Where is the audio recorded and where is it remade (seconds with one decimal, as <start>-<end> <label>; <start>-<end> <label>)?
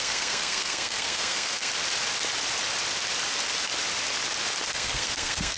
0.0-1.7 remade; 1.7-4.7 recorded; 4.7-5.6 remade